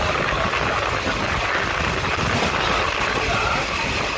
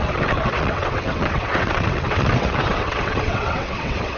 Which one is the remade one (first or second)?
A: second